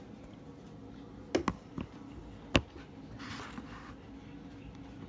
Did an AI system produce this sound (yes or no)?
no